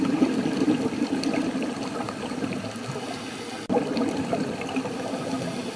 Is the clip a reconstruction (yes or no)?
no